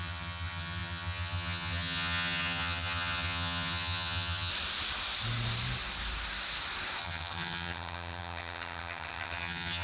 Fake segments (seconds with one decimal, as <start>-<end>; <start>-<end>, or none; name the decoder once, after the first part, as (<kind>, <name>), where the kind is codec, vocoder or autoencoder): 0.0-4.5 (vocoder, HiFi-GAN); 7.0-9.8